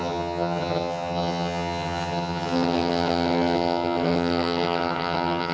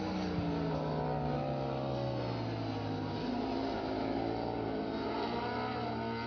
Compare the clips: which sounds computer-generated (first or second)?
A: first